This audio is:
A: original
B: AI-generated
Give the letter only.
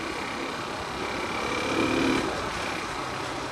A